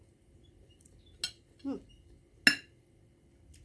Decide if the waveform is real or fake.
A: real